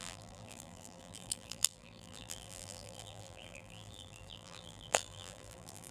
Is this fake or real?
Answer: fake